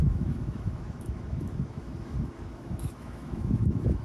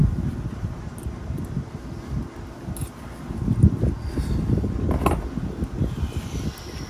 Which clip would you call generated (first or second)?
first